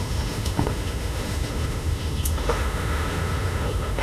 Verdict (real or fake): fake